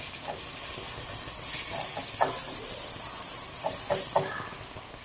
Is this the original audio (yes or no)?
yes